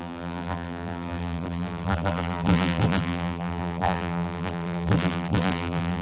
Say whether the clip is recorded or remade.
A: remade